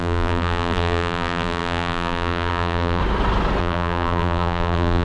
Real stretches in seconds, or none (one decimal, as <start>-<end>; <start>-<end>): 3.0-3.6